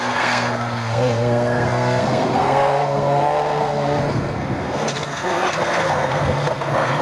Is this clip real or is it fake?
fake